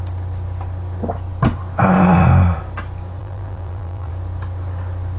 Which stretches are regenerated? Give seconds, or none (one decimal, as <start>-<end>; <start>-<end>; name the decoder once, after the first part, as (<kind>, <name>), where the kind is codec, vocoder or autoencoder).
3.2-4.1 (vocoder, BigVGAN v2)